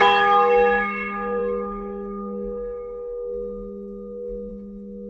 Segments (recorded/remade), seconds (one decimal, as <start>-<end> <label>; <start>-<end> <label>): 0.0-5.1 remade